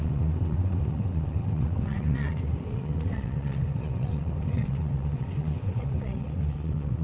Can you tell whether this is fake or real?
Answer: fake